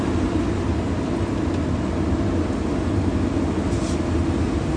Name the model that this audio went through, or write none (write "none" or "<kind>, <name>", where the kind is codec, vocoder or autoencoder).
none